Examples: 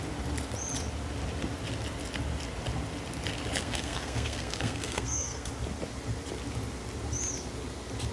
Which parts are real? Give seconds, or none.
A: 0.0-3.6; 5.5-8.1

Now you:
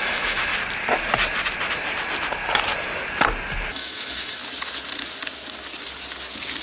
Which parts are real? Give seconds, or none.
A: 0.5-3.7; 4.4-6.6